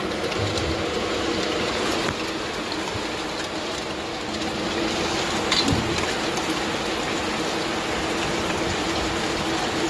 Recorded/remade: recorded